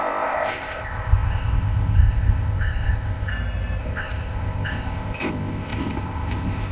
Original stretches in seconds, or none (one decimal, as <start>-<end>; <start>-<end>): 3.3-3.8